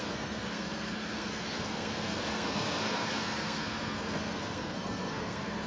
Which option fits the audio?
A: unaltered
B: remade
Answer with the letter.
B